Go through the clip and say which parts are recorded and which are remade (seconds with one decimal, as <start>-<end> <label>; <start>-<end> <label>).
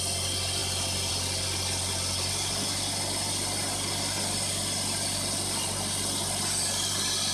0.0-7.3 recorded